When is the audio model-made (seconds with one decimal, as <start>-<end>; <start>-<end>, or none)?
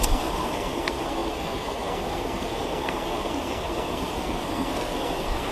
0.0-5.5